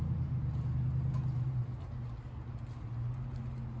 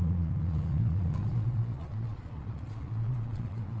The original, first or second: first